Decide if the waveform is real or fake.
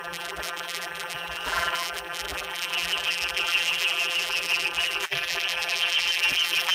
fake